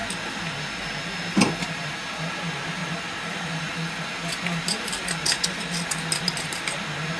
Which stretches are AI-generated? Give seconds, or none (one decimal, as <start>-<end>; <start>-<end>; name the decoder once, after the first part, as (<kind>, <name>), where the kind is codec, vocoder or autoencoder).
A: none